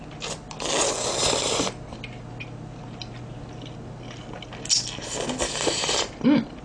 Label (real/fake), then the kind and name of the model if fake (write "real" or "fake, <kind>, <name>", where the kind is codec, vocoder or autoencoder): real